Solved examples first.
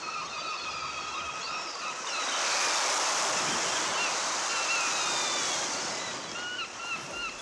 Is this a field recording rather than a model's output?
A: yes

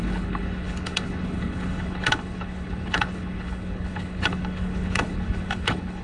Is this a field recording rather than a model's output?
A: no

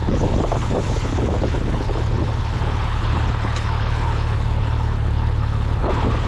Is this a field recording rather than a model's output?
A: no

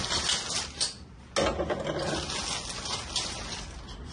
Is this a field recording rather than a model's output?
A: yes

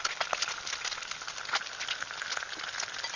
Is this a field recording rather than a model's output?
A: yes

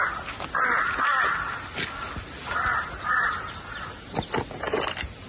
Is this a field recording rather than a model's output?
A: yes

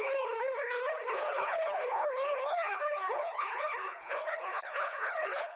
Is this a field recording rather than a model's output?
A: no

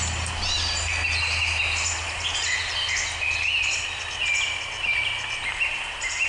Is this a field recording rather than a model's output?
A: yes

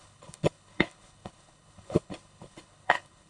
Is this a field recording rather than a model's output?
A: no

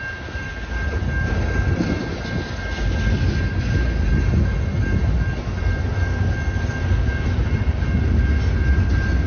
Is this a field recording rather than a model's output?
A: yes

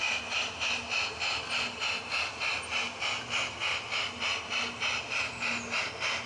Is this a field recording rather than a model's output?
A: yes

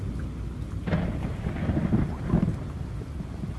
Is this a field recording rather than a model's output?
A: yes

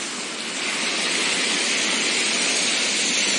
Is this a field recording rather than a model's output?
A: yes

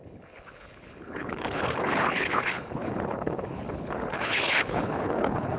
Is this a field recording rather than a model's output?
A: no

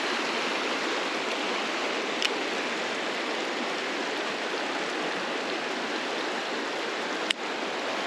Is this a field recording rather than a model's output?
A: yes